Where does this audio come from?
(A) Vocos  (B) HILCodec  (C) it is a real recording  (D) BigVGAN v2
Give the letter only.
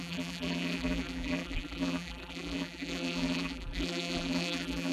D